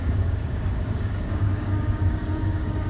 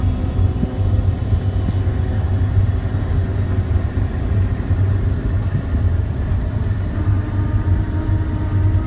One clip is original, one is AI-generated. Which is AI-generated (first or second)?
first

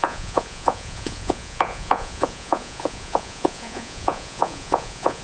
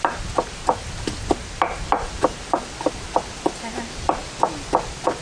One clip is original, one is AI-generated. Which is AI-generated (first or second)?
first